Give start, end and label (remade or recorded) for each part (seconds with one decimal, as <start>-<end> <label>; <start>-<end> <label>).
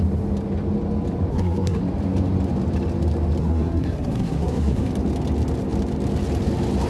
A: 0.0-1.3 recorded; 1.3-1.8 remade; 1.8-3.4 recorded; 3.4-4.9 remade; 4.9-6.9 recorded